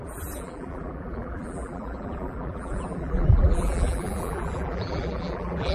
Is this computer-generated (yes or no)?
yes